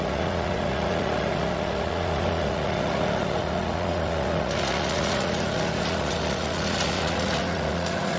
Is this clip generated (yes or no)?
yes